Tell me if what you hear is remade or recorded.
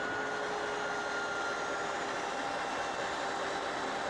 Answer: recorded